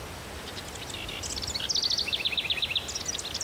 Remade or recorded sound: recorded